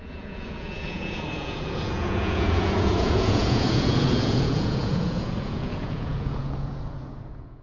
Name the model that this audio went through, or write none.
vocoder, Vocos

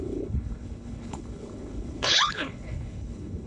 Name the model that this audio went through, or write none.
codec, HILCodec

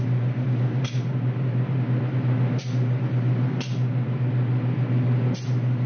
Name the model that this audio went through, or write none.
none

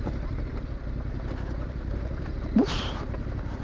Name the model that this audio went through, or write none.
vocoder, BigVGAN v2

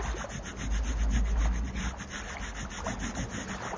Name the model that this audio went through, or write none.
none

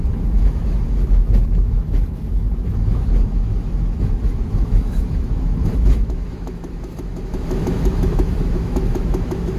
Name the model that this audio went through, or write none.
autoencoder, DAC-VAE